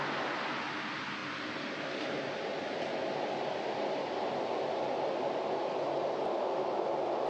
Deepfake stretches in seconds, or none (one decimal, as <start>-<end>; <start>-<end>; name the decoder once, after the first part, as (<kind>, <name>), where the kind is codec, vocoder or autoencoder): none